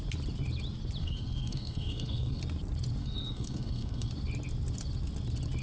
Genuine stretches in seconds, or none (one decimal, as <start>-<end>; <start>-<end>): 0.0-1.0; 2.4-3.0; 4.1-5.6